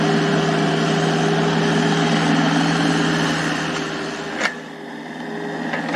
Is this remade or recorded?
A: recorded